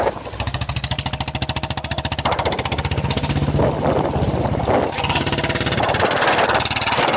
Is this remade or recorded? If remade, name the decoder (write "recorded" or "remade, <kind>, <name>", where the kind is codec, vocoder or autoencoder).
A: recorded